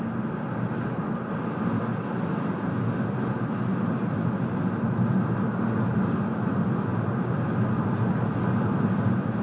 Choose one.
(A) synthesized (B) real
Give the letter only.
B